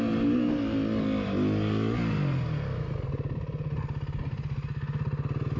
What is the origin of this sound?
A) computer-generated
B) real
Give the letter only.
B